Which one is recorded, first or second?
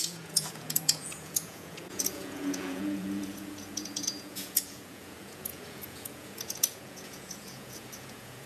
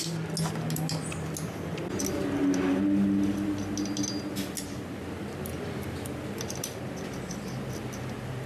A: second